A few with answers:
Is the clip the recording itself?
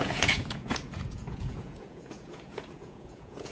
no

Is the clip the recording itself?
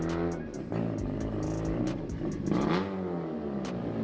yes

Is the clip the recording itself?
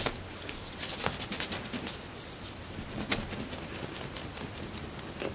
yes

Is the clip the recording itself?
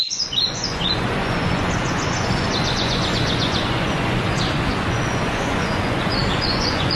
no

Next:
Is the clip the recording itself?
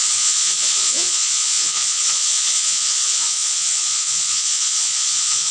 no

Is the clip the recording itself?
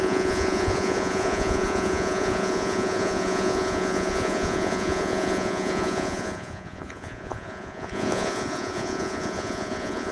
no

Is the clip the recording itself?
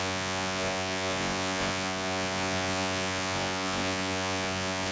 no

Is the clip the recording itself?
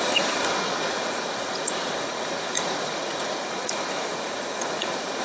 no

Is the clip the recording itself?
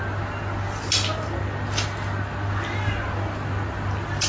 yes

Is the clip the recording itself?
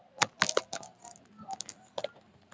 yes